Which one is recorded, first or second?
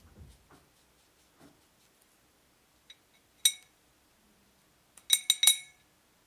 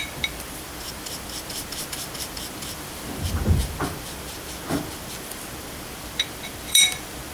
first